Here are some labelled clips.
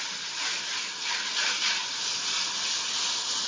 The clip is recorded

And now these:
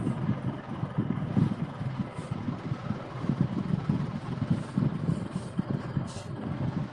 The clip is recorded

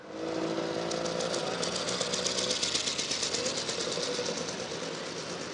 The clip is recorded